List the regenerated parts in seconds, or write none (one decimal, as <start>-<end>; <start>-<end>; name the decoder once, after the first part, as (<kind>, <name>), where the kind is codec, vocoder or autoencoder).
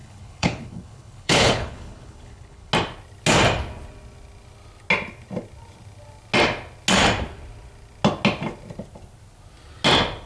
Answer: 0.0-2.7 (codec, HILCodec)